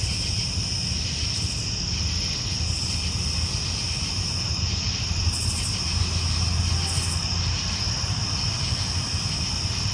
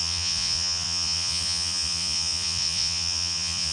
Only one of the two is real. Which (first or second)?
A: first